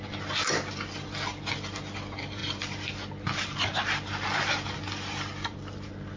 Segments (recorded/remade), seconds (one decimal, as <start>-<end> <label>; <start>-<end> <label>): 0.0-6.2 recorded